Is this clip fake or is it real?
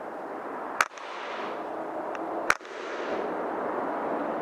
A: real